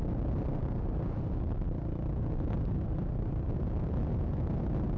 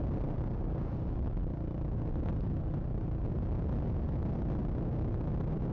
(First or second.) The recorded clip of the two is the second